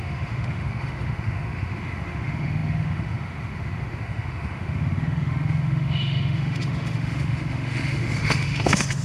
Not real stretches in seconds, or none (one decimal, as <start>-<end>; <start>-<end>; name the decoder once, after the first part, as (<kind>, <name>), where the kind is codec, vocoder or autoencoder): 0.0-9.0 (autoencoder, DAC-VAE)